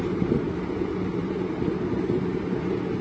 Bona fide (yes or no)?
no